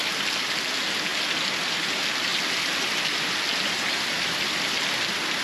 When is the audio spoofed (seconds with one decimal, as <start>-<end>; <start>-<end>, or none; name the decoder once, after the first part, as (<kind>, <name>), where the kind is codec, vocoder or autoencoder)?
none